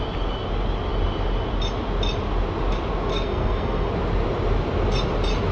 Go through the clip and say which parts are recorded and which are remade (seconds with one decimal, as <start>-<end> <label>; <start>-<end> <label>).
0.0-3.1 recorded; 3.1-3.9 remade; 3.9-5.5 recorded